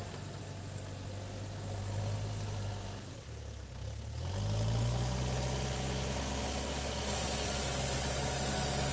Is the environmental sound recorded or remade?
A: recorded